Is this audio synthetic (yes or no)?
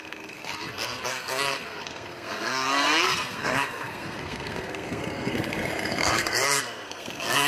yes